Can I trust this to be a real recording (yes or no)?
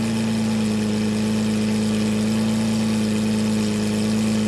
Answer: yes